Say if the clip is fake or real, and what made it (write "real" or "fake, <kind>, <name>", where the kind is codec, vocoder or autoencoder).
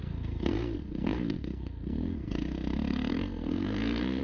fake, codec, SNAC